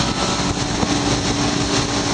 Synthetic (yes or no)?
no